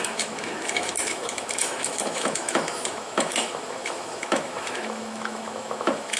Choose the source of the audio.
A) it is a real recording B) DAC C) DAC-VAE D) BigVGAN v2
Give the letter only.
C